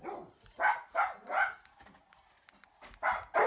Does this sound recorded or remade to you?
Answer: recorded